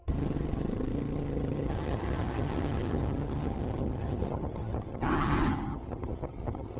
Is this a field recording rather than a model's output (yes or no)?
no